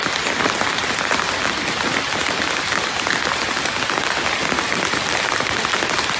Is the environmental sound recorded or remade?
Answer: recorded